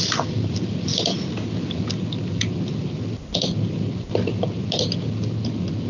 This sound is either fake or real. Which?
real